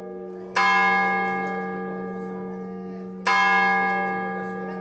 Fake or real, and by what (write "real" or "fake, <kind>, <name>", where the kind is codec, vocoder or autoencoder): real